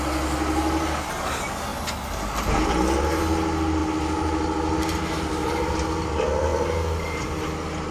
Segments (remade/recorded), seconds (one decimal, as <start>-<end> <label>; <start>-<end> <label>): 0.0-7.9 recorded

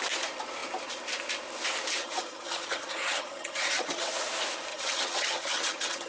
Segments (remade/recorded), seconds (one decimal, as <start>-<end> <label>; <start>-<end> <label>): 0.0-2.0 recorded; 2.0-4.1 remade; 4.1-4.7 recorded; 4.7-6.1 remade